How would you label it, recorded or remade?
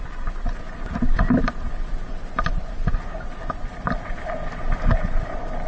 recorded